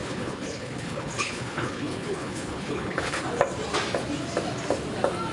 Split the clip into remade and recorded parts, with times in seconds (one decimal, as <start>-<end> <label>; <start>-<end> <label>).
0.0-3.2 remade; 3.2-5.3 recorded

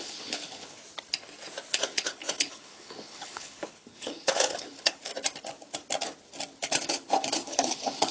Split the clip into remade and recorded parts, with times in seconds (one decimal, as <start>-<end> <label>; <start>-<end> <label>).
0.0-0.8 remade; 0.8-1.7 recorded; 1.7-5.1 remade; 5.1-6.6 recorded; 6.6-8.1 remade

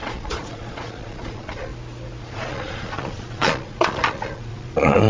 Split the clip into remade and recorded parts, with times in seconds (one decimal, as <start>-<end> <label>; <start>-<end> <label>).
0.0-1.7 remade; 1.7-2.2 recorded; 2.2-5.1 remade